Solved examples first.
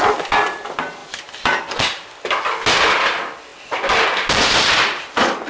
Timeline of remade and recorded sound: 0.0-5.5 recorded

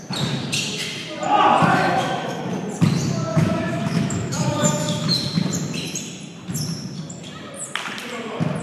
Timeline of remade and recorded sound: 0.0-1.7 recorded; 1.7-2.4 remade; 2.4-3.3 recorded; 3.3-5.1 remade; 5.1-8.6 recorded

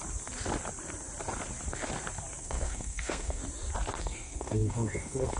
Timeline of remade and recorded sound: 0.0-2.4 recorded; 2.4-3.4 remade; 3.4-4.0 recorded; 4.0-5.4 remade

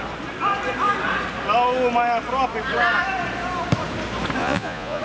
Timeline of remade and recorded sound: 0.0-4.4 recorded; 4.4-5.0 remade

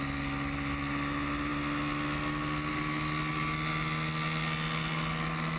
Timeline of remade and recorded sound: 0.0-5.6 recorded

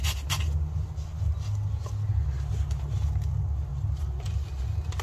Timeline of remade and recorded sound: 0.0-5.0 recorded

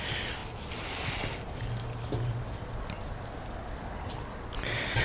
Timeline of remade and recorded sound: 0.0-5.0 recorded

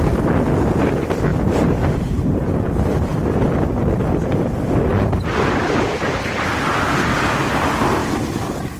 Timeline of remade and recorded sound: 0.0-1.3 recorded; 1.3-2.5 remade; 2.5-8.8 recorded